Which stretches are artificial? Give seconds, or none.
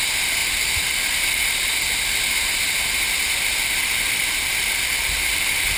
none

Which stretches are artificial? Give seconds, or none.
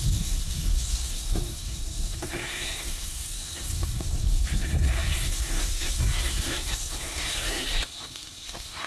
0.0-8.9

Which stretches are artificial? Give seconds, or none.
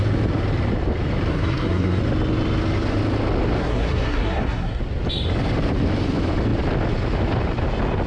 1.3-2.0; 3.6-4.8